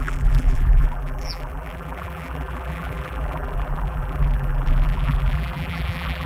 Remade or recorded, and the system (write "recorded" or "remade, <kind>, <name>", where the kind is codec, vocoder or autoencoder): remade, vocoder, BigVGAN v2